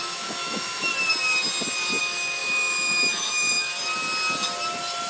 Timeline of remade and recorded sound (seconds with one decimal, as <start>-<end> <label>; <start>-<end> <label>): 0.0-0.9 remade; 0.9-2.0 recorded; 2.0-3.7 remade; 3.7-5.1 recorded